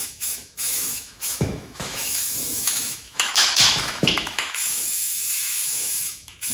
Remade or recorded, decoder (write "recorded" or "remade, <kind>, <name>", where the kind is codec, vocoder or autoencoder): remade, autoencoder, DAC-VAE